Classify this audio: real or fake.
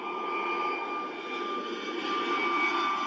real